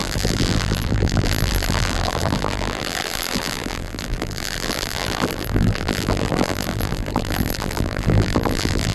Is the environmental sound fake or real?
fake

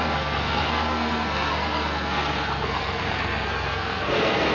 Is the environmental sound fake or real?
fake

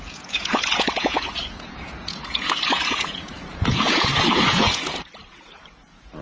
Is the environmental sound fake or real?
fake